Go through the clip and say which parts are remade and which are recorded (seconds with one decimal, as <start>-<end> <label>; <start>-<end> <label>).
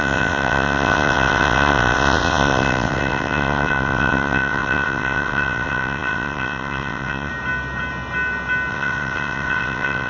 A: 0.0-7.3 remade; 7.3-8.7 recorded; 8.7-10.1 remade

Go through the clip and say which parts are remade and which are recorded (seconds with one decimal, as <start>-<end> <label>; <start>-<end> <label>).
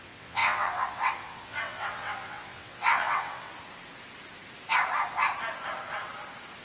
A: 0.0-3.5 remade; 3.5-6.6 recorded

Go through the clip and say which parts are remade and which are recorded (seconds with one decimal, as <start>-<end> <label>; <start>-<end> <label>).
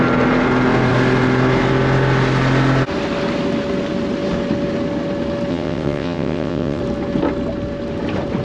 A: 0.0-5.5 recorded; 5.5-6.8 remade; 6.8-8.4 recorded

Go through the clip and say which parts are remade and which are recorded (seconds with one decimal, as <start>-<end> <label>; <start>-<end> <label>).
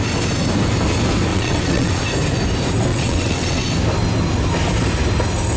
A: 0.0-1.3 recorded; 1.3-2.0 remade; 2.0-2.9 recorded; 2.9-3.7 remade; 3.7-5.6 recorded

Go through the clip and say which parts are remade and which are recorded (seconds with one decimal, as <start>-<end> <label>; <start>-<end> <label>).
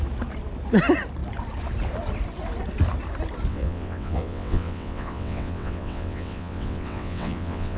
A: 0.0-3.5 recorded; 3.5-7.8 remade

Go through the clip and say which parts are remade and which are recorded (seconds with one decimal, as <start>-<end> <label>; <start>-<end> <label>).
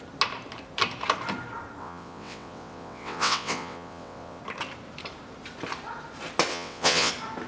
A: 0.0-1.8 recorded; 1.8-4.4 remade; 4.4-6.5 recorded; 6.5-7.1 remade; 7.1-7.5 recorded